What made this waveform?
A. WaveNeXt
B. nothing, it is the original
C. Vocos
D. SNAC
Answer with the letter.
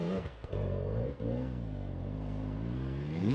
D